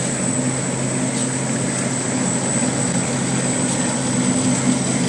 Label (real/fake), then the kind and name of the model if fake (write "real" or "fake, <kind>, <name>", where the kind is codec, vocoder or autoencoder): real